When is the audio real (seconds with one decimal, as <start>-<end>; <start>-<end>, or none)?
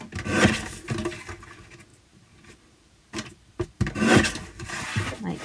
0.0-1.9